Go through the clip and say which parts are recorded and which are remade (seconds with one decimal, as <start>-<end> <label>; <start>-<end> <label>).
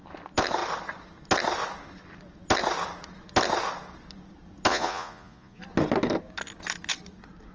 0.0-4.7 recorded; 4.7-5.6 remade; 5.6-7.5 recorded